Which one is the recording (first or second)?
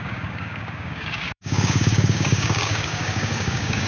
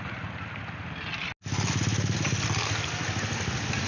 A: second